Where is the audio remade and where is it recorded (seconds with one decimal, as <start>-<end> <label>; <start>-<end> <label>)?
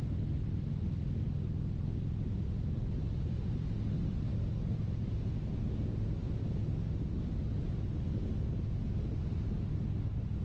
0.0-10.4 recorded